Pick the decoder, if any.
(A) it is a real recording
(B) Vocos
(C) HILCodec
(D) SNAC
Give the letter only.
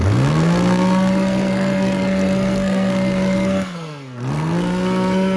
D